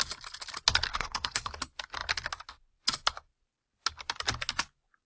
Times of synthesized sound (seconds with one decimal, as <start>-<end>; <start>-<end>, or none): 0.9-1.5